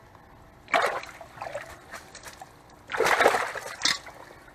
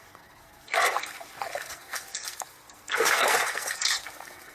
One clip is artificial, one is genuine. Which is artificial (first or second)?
second